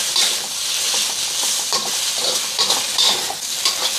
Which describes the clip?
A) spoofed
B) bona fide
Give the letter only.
B